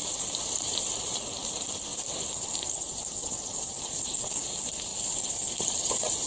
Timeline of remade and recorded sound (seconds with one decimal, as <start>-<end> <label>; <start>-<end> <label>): 0.0-1.5 remade; 1.5-1.9 recorded; 1.9-2.7 remade; 2.7-6.3 recorded